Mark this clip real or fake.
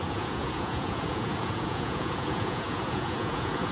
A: fake